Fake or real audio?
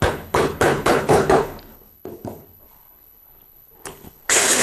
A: fake